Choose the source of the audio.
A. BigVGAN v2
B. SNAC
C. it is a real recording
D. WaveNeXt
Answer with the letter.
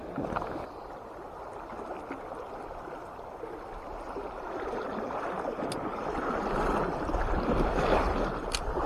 C